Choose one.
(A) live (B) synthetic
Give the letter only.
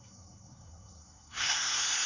B